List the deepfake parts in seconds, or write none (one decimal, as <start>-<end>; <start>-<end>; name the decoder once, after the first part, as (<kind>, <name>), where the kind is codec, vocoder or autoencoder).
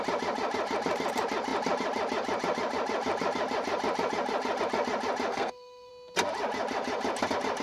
5.3-5.9 (codec, SNAC)